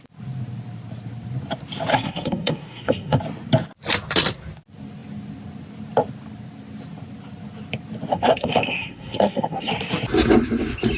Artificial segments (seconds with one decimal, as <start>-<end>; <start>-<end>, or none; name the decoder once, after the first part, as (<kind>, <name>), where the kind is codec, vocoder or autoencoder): 1.9-3.2 (codec, SNAC); 8.1-9.7